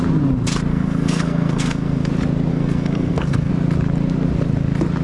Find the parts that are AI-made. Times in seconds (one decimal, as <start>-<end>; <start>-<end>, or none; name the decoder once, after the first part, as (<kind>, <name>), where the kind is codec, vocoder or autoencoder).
0.7-2.1 (codec, SNAC); 2.5-3.5